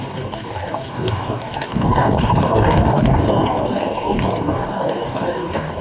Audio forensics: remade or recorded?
remade